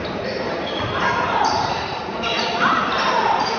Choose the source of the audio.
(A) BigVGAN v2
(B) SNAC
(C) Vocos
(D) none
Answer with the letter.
D